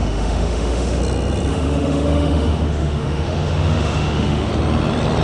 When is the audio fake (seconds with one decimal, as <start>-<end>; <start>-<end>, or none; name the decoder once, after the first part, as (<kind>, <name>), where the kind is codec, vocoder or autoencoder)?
0.0-1.0 (autoencoder, DAC-VAE); 1.5-4.5